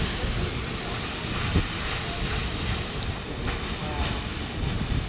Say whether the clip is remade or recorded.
recorded